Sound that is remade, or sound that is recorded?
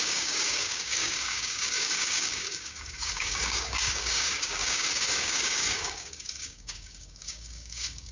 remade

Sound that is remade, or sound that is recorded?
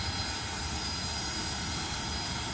recorded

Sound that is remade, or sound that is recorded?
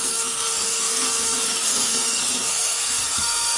remade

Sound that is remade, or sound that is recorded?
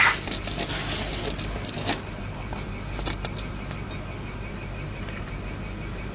recorded